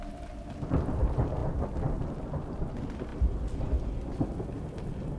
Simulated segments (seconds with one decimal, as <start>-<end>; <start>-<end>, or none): none